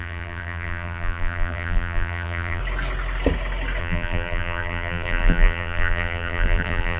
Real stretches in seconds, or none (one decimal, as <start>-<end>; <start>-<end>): 2.6-3.8